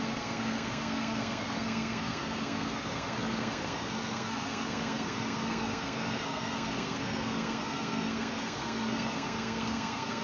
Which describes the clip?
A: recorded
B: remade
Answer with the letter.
B